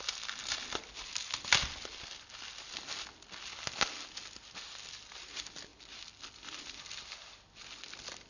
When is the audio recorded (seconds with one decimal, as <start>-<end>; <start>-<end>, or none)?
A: 0.0-8.3